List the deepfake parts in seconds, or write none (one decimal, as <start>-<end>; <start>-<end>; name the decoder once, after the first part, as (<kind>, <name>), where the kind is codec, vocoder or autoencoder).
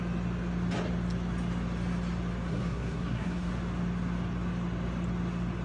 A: 2.5-3.5 (codec, SNAC)